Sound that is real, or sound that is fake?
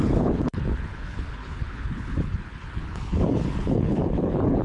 fake